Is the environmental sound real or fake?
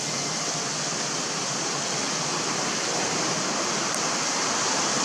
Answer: real